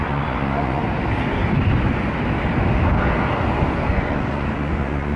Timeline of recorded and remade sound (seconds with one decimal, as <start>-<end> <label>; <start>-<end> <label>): 0.0-0.8 remade; 0.8-3.9 recorded; 3.9-5.2 remade